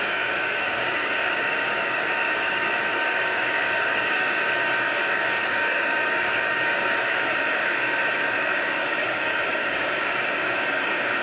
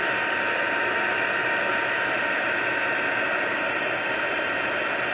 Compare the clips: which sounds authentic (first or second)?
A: second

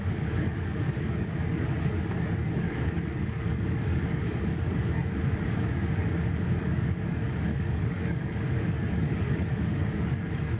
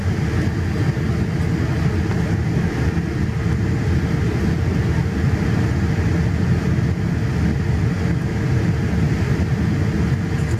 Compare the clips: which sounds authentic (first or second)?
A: second